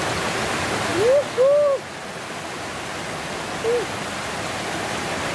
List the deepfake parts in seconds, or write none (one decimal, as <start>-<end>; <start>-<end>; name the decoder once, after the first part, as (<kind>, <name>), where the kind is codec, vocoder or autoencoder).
none